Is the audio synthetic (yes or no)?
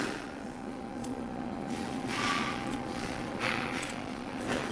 yes